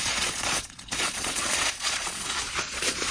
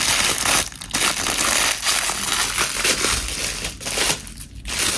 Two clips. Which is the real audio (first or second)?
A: second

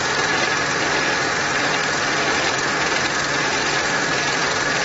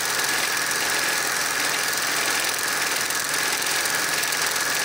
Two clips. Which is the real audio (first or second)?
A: second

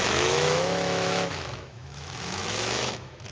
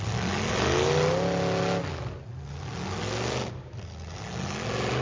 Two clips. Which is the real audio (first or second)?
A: second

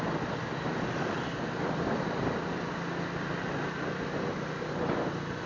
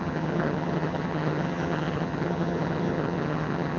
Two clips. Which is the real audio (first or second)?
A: first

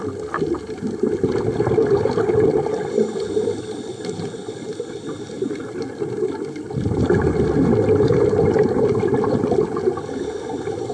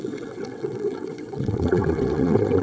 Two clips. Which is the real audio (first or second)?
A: first